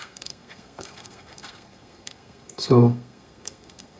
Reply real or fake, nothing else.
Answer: fake